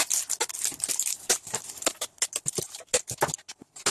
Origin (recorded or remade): recorded